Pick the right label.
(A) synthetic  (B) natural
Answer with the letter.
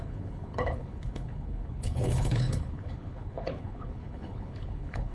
A